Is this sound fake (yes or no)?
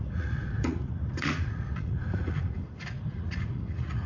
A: yes